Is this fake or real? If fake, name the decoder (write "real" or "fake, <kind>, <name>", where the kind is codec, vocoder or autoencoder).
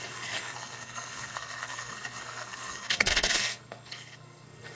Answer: fake, codec, SNAC